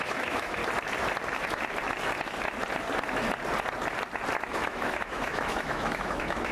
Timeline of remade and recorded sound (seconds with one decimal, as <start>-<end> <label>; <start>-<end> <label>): 0.0-0.6 remade; 0.6-4.5 recorded; 4.5-6.5 remade

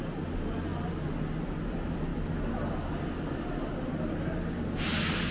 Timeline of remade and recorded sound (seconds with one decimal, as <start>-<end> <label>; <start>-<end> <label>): 0.0-5.3 recorded

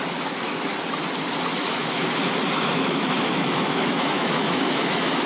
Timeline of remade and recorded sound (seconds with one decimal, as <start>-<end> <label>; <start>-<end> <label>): 0.0-0.7 remade; 0.7-1.6 recorded; 1.6-2.0 remade; 2.0-2.6 recorded; 2.6-5.3 remade